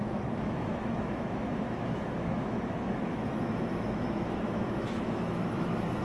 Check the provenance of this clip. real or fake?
fake